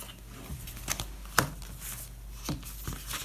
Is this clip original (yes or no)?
yes